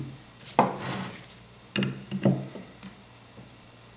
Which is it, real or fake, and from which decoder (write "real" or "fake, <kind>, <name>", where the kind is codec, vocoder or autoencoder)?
real